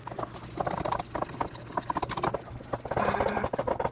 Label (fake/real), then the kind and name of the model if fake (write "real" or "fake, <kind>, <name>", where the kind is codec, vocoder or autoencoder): real